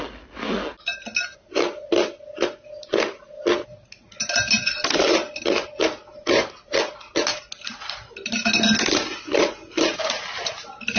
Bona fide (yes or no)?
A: yes